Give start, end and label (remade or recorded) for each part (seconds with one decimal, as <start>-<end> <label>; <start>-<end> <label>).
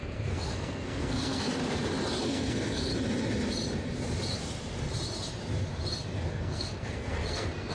0.0-1.6 remade; 1.6-2.2 recorded; 2.2-2.9 remade; 2.9-6.3 recorded; 6.3-7.7 remade